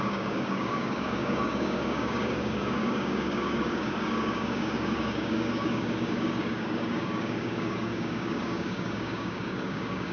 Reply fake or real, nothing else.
fake